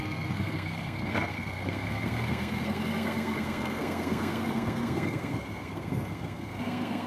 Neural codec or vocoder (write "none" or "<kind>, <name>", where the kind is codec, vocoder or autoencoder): codec, SNAC